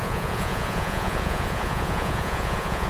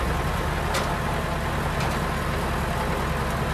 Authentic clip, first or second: second